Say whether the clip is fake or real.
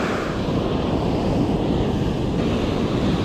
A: real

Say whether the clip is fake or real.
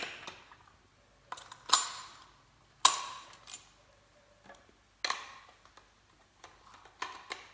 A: real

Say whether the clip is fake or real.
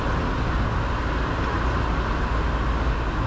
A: real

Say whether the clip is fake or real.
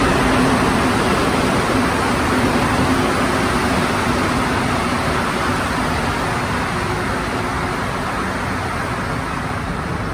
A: real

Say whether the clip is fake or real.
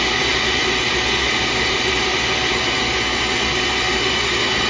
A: real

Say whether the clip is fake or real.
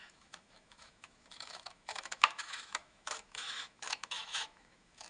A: fake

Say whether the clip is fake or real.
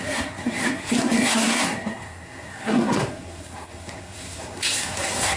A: fake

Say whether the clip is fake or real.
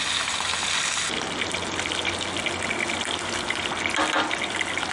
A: real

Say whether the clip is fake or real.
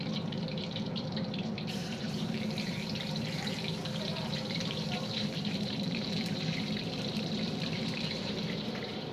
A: fake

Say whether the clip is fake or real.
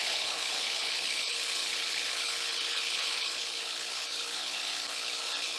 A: fake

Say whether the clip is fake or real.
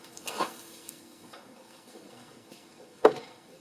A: fake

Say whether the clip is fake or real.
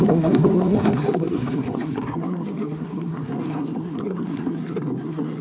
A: fake